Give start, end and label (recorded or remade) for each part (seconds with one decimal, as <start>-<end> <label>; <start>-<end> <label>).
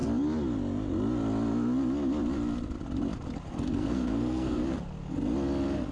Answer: 0.0-3.5 recorded; 3.5-4.6 remade; 4.6-5.9 recorded